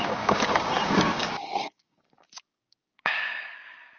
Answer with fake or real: fake